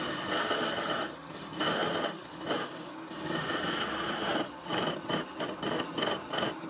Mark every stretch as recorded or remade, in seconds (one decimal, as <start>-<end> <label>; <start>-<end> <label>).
0.0-6.7 recorded